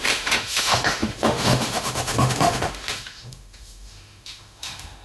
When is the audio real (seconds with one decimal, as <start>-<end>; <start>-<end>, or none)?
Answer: none